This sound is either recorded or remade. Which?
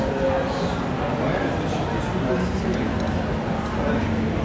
recorded